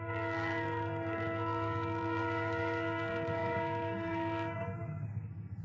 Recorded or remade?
remade